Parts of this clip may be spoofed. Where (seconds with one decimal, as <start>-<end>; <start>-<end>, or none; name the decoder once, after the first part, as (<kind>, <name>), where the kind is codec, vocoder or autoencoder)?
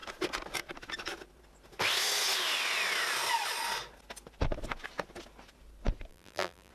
6.1-6.7 (vocoder, BigVGAN v2)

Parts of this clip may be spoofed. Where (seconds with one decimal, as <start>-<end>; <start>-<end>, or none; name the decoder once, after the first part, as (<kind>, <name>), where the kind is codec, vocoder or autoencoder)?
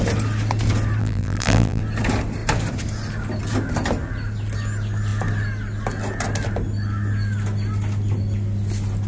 1.0-1.8 (vocoder, BigVGAN v2)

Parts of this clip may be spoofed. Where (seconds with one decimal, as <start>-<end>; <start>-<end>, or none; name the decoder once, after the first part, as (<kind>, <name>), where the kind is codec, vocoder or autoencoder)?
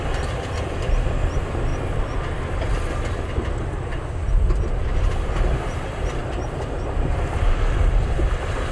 none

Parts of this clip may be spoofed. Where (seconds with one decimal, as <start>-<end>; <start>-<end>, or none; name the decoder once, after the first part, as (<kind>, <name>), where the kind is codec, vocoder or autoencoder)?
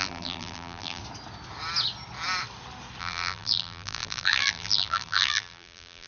0.0-1.0 (vocoder, BigVGAN v2); 3.0-6.1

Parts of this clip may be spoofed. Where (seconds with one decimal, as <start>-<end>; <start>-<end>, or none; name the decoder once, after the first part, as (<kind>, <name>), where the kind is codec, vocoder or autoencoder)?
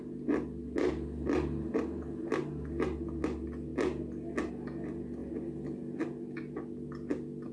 none